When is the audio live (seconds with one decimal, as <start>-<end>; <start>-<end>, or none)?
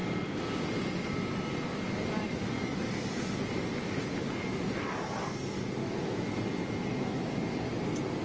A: 0.0-5.8; 6.4-6.9; 7.4-8.2